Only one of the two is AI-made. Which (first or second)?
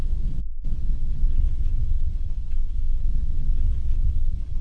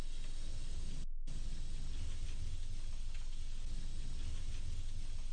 first